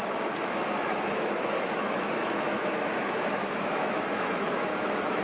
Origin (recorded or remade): remade